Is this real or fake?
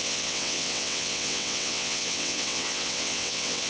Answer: fake